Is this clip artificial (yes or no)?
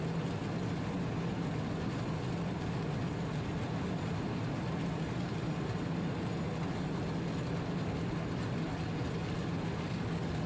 no